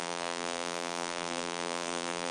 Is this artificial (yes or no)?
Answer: yes